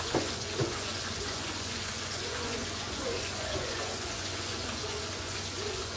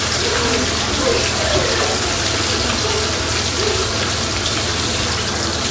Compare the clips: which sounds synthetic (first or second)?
first